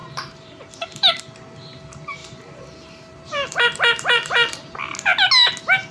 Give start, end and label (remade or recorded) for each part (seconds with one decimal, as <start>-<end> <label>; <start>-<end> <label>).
0.0-1.2 remade; 1.2-2.2 recorded; 2.2-4.8 remade; 4.8-5.9 recorded